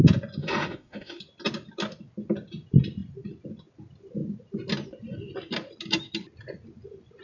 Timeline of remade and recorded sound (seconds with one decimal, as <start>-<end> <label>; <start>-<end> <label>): 0.0-0.4 recorded; 0.4-1.2 remade; 1.2-7.2 recorded